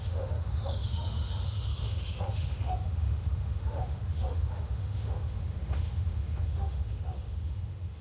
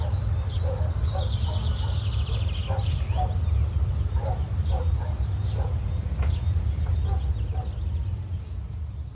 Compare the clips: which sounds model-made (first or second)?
first